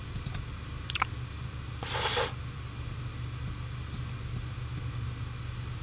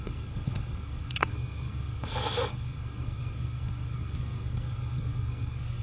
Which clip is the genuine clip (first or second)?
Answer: first